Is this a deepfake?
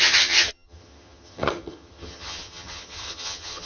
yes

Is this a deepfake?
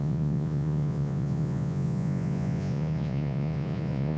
yes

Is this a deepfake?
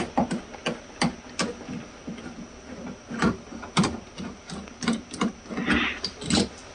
no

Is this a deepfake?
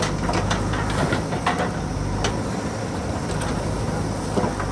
no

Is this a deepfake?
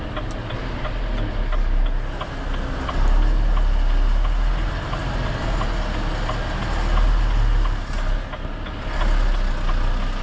no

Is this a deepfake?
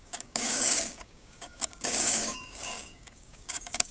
yes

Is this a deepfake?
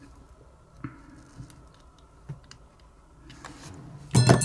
no